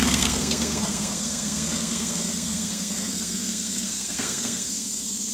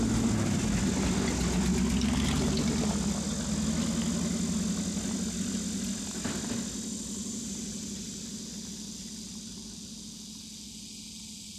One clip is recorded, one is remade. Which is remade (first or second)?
first